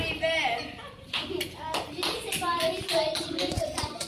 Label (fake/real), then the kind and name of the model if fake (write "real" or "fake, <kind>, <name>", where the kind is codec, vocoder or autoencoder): real